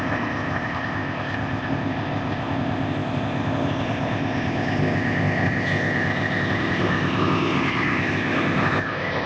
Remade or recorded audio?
remade